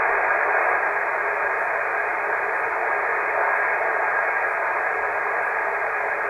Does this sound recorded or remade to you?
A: recorded